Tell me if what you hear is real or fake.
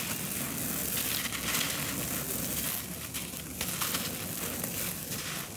real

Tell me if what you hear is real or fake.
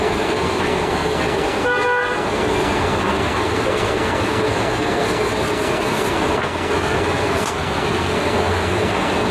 fake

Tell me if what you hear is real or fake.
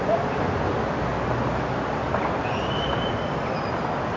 real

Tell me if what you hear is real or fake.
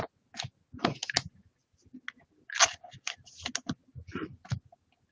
real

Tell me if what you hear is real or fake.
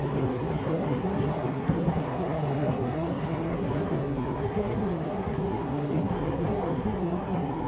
fake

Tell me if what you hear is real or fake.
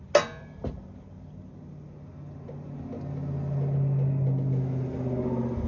real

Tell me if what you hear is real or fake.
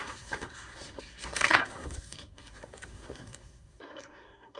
fake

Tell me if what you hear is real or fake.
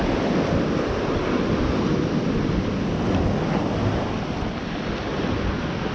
real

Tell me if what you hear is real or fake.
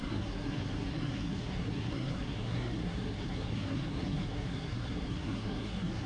fake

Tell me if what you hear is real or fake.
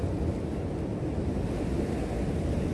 real